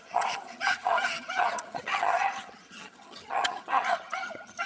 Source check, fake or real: fake